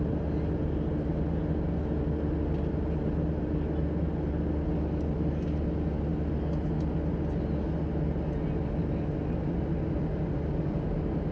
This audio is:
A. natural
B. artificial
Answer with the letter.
A